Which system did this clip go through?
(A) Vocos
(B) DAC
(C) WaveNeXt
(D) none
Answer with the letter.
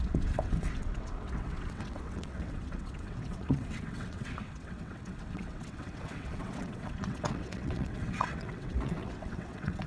C